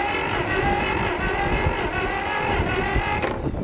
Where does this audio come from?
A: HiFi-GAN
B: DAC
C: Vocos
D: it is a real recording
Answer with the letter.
D